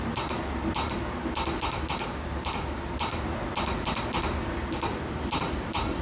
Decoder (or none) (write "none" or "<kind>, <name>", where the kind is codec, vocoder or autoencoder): none